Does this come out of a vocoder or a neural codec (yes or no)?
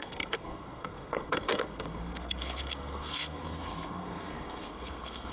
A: yes